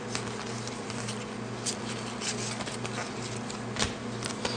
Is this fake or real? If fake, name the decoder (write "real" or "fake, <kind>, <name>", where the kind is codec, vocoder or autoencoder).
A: real